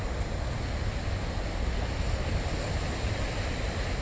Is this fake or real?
real